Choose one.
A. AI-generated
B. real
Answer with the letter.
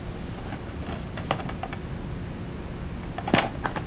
B